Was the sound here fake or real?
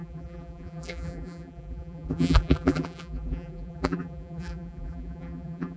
fake